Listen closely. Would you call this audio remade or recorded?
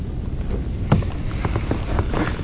recorded